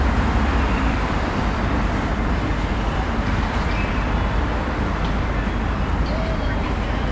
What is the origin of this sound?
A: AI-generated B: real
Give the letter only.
A